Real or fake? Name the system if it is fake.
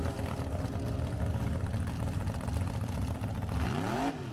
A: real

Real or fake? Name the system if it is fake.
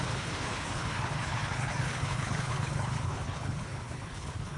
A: fake, codec, HILCodec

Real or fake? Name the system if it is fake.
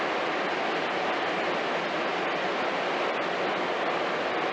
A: real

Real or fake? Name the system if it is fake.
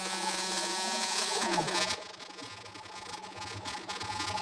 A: fake, vocoder, Vocos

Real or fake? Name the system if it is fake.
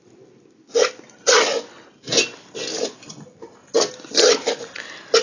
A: real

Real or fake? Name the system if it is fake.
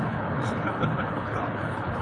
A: fake, codec, HILCodec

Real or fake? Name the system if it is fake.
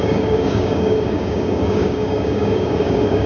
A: fake, codec, DAC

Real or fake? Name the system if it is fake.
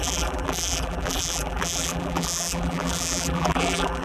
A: fake, vocoder, BigVGAN v2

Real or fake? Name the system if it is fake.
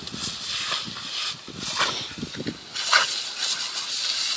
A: real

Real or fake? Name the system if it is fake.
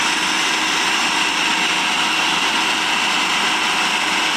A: real